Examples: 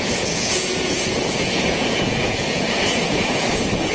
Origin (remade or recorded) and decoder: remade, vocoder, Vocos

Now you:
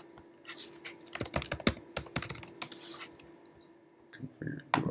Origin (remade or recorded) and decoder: recorded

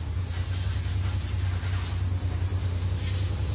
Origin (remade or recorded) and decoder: recorded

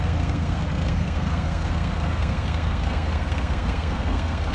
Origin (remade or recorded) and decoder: remade, codec, SNAC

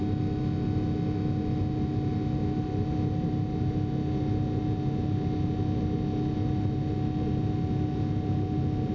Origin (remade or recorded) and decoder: recorded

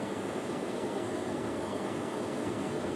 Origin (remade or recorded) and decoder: remade, codec, SNAC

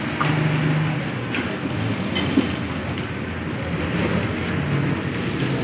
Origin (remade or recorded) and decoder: recorded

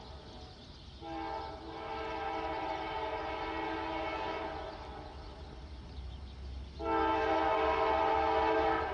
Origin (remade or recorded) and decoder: recorded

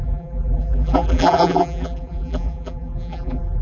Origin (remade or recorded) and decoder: remade, vocoder, BigVGAN v2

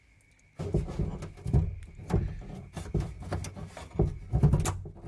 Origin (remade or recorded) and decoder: recorded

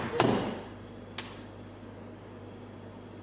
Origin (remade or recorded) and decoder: recorded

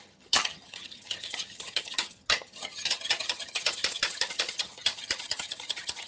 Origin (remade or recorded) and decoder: remade, vocoder, HiFi-GAN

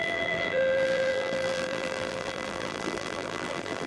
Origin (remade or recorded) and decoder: remade, vocoder, BigVGAN v2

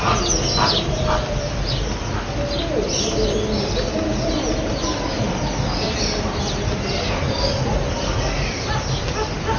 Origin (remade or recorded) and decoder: recorded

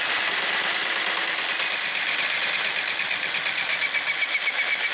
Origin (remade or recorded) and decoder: recorded